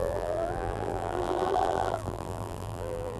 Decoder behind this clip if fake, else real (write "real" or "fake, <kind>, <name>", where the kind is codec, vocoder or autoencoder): fake, vocoder, BigVGAN v2